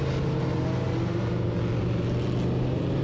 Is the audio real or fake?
real